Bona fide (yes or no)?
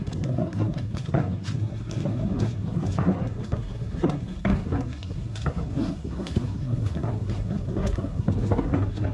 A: no